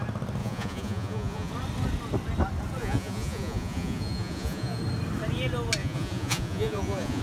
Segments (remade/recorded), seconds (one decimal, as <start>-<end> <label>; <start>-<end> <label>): 0.0-0.4 recorded; 0.4-1.5 remade; 1.5-2.8 recorded; 2.8-4.8 remade; 4.8-5.8 recorded; 5.8-7.2 remade